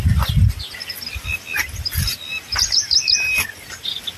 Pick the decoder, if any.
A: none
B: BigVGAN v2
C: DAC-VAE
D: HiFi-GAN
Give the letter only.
A